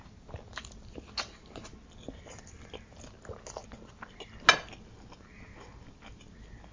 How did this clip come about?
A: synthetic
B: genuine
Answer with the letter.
B